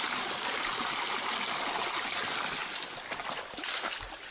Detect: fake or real real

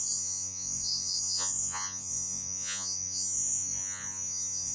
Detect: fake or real fake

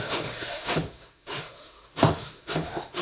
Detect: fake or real fake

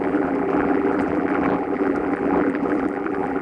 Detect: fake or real fake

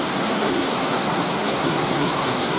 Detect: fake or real fake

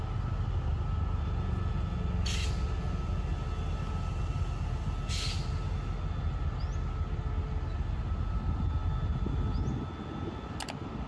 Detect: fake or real real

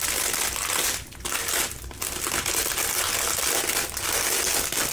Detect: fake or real real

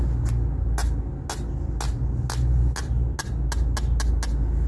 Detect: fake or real real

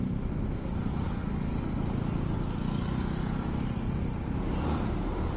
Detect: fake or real real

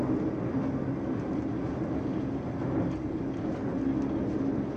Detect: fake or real real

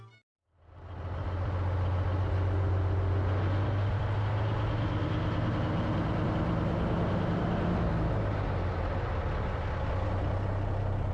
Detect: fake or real real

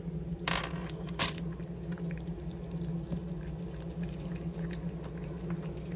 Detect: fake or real real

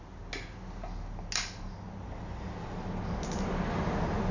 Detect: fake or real real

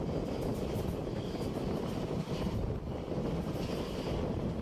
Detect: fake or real real